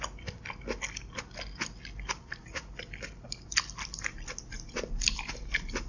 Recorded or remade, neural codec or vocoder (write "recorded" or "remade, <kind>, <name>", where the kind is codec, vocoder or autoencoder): recorded